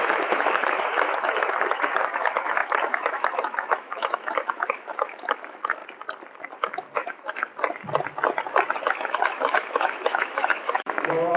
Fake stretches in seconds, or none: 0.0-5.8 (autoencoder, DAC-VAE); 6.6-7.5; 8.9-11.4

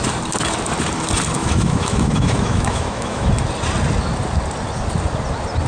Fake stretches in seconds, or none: 1.4-3.3 (autoencoder, DAC-VAE)

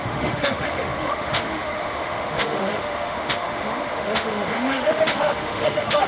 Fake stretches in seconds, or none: 0.0-6.1 (autoencoder, DAC-VAE)

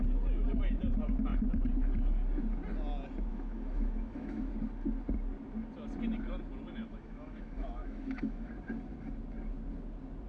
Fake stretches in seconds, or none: 3.3-4.5 (autoencoder, DAC-VAE); 6.9-8.5